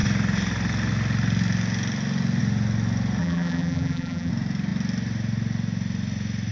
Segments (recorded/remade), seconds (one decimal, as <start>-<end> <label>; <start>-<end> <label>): 0.0-3.2 recorded; 3.2-4.3 remade; 4.3-6.5 recorded